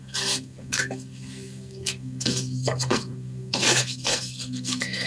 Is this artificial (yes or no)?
yes